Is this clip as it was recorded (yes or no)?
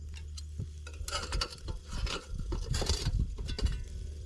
yes